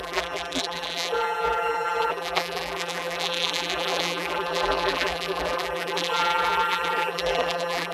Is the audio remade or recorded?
remade